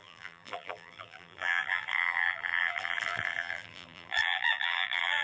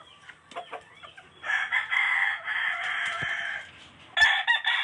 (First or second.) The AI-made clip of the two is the first